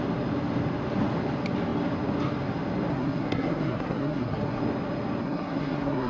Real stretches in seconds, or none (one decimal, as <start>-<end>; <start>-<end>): 0.0-2.9; 4.6-5.2